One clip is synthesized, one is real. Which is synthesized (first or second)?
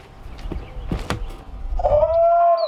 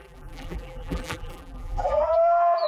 second